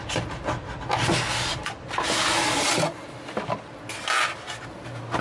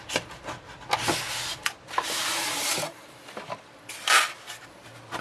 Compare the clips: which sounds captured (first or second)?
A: first